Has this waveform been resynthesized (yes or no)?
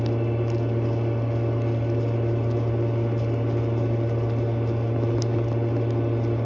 no